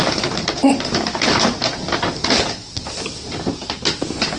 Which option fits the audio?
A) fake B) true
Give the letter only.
B